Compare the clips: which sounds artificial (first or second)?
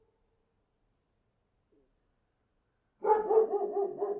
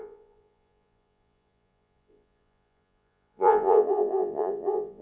second